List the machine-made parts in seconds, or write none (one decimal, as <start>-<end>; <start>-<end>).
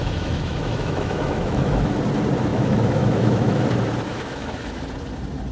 0.0-2.0; 2.5-3.6; 4.1-4.8